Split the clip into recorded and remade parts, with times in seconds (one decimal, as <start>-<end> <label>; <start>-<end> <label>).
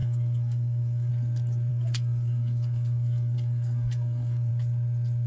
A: 0.0-1.1 remade; 1.1-1.7 recorded; 1.7-4.5 remade; 4.5-5.3 recorded